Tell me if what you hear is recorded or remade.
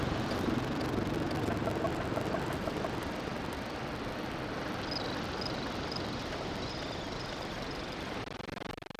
recorded